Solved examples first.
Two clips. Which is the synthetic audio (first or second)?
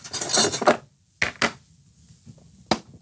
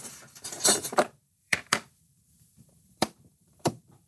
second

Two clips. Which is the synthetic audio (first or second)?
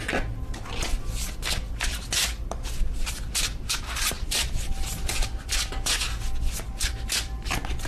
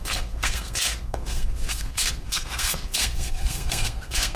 second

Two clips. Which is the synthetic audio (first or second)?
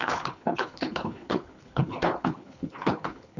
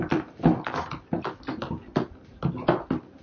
first